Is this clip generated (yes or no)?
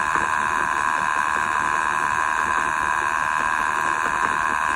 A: no